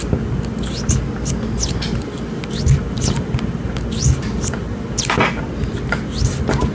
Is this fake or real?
real